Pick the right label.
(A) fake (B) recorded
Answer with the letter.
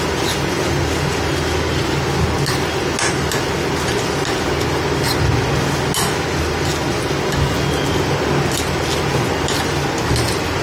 B